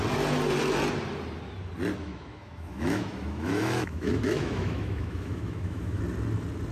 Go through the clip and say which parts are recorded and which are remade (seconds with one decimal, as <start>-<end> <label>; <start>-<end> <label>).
0.0-2.0 recorded; 2.0-6.0 remade; 6.0-6.7 recorded